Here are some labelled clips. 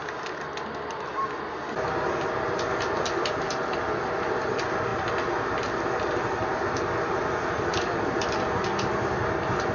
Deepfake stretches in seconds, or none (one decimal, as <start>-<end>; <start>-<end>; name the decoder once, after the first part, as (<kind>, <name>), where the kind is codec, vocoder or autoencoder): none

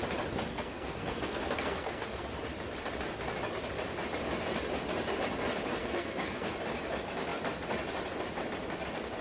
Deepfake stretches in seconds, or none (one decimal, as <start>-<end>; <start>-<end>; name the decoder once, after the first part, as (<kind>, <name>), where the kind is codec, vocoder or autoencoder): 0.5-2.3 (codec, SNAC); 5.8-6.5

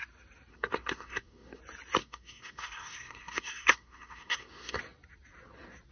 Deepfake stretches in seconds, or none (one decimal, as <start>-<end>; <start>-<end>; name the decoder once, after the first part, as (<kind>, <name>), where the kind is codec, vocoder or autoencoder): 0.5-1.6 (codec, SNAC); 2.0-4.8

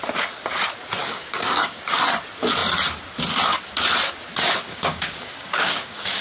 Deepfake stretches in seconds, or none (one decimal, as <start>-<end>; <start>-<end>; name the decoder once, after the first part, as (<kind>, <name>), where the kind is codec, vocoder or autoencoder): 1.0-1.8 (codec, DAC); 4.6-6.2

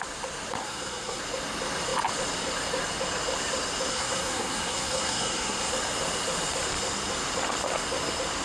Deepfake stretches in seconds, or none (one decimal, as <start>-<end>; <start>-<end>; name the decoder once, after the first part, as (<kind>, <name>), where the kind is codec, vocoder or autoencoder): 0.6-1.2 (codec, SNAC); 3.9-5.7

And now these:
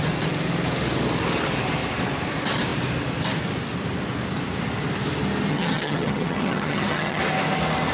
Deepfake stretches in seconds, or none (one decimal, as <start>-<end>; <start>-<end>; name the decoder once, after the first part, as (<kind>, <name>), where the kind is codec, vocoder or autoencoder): 5.5-7.2 (vocoder, HiFi-GAN)

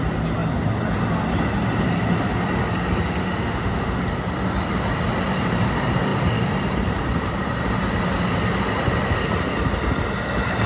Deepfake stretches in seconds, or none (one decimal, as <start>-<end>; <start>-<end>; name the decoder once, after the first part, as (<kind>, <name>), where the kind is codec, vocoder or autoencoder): 3.2-4.0 (autoencoder, DAC-VAE)